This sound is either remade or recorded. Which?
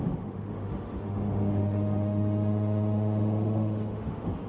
remade